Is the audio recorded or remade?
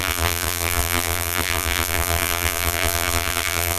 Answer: remade